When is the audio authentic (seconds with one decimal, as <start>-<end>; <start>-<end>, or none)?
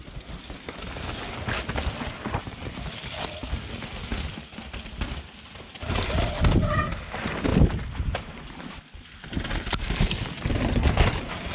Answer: 0.0-11.5